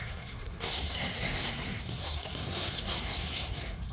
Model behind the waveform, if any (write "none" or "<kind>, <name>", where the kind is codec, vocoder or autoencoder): codec, SNAC